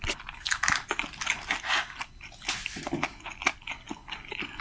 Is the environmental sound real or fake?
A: real